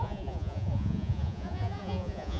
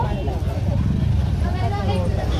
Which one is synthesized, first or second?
first